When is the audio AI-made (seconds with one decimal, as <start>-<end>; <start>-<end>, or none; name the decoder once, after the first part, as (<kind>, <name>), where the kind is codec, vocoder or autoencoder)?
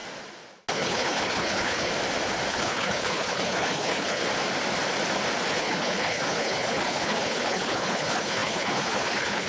0.7-1.9 (codec, HILCodec); 2.5-4.2; 5.5-9.5